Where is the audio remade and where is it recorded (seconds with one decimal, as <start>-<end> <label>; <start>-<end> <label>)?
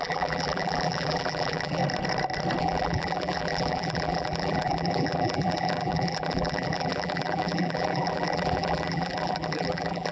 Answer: 0.0-1.8 remade; 1.8-2.6 recorded; 2.6-10.1 remade